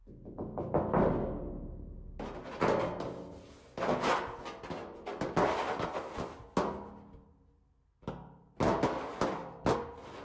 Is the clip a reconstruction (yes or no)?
no